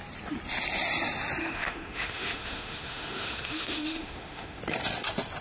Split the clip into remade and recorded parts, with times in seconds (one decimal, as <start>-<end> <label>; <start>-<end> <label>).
0.0-1.4 recorded; 1.4-4.6 remade; 4.6-5.4 recorded